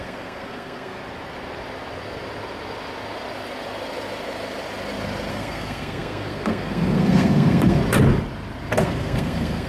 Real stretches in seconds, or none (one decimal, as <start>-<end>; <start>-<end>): 1.0-5.3; 7.8-8.8